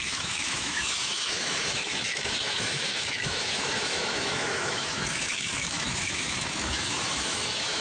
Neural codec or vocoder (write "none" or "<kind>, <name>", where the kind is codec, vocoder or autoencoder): autoencoder, DAC-VAE